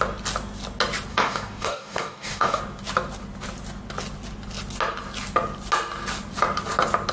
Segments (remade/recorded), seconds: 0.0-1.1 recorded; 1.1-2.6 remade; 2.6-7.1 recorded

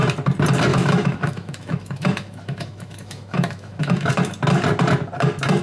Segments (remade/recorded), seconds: 0.0-0.7 recorded; 0.7-4.1 remade; 4.1-5.6 recorded

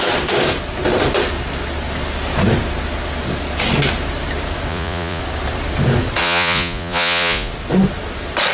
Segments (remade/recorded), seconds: 0.0-4.7 recorded; 4.7-5.2 remade; 5.2-6.2 recorded; 6.2-7.5 remade; 7.5-8.5 recorded

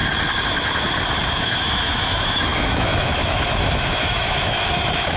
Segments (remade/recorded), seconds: 0.0-1.3 recorded; 1.3-5.2 remade

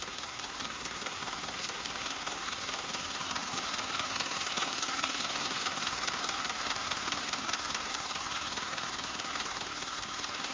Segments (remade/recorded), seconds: 0.0-10.5 remade

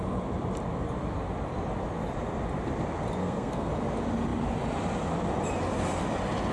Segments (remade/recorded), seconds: 0.0-3.2 recorded; 3.2-3.7 remade; 3.7-6.5 recorded

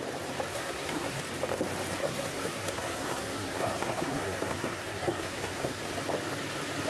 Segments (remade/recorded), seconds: 0.0-0.5 recorded; 0.5-1.2 remade; 1.2-2.0 recorded; 2.0-5.8 remade; 5.8-6.9 recorded